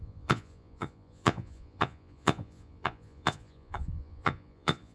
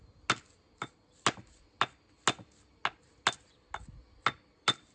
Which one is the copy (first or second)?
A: first